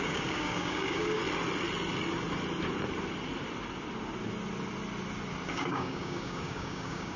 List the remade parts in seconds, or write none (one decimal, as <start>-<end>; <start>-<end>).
0.0-1.2; 5.5-7.2